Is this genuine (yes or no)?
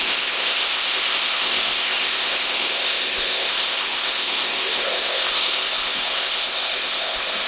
no